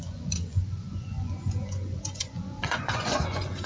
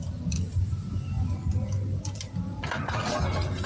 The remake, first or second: first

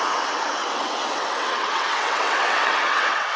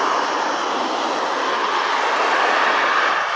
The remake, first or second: first